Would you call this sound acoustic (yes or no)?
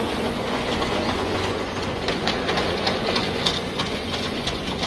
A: no